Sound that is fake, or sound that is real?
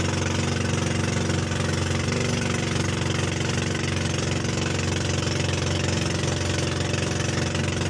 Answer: real